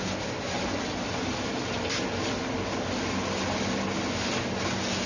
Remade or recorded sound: recorded